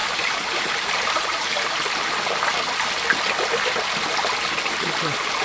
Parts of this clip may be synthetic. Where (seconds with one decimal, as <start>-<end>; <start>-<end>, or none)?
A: 0.0-1.5; 4.5-5.4